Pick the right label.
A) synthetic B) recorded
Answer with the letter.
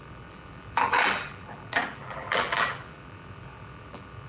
A